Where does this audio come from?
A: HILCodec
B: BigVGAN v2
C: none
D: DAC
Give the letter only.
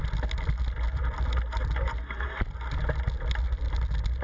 C